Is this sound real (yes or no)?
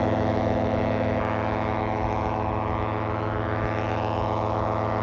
no